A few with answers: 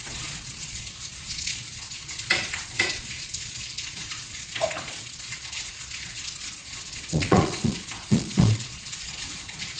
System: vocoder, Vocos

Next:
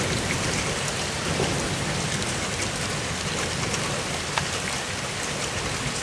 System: none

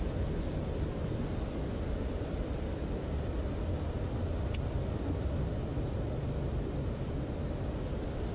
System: none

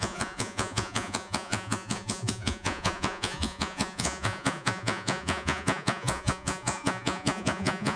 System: vocoder, Vocos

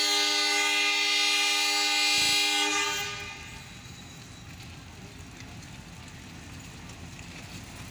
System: none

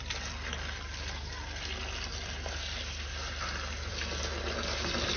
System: none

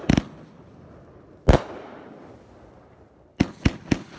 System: none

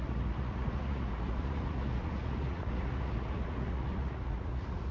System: vocoder, Vocos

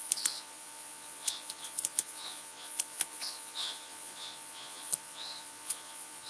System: vocoder, Vocos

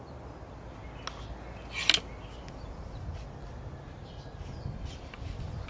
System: none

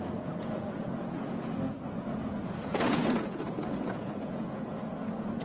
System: vocoder, Vocos